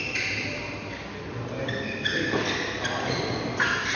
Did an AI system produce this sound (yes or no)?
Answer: no